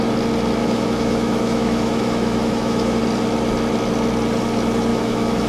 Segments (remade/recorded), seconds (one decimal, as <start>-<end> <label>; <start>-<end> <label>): 0.0-0.6 recorded; 0.6-3.0 remade; 3.0-4.9 recorded; 4.9-5.5 remade